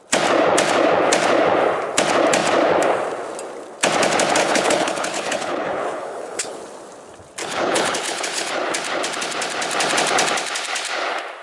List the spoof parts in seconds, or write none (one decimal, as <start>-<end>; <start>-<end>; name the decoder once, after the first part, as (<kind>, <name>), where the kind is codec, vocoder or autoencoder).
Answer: 4.4-6.6 (codec, HILCodec); 7.4-8.5